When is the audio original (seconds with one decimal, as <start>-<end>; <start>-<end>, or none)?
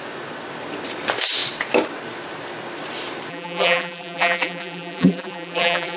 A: 0.0-3.3